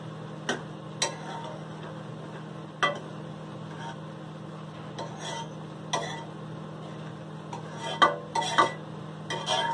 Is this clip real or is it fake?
real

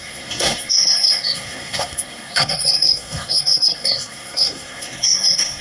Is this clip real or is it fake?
fake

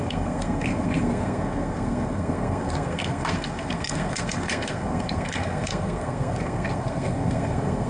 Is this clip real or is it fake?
fake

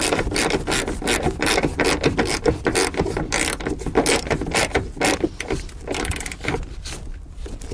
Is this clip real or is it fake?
real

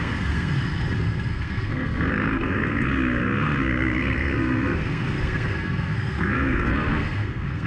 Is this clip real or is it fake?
fake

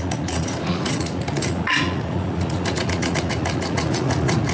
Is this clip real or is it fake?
fake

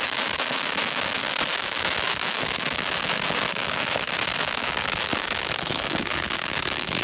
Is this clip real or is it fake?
fake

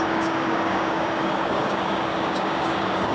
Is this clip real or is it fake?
fake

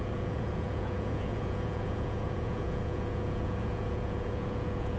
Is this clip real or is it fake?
fake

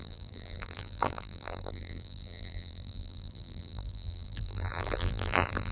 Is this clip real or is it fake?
fake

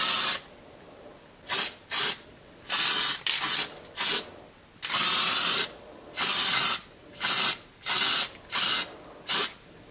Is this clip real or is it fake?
real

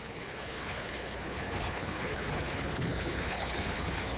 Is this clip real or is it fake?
fake